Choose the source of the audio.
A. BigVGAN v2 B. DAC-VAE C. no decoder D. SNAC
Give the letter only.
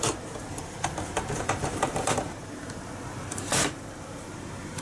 A